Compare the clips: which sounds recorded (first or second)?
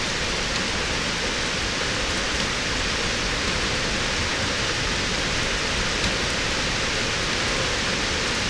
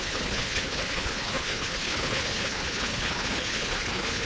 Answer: first